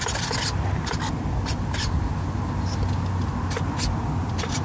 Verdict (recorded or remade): recorded